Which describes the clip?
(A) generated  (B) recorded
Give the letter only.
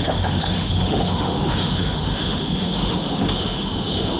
A